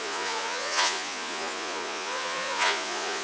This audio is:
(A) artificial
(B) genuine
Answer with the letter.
A